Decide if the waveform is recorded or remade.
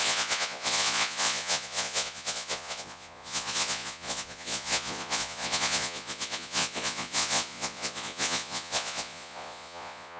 remade